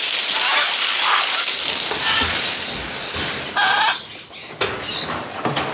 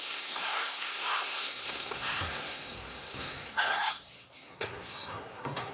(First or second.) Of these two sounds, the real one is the first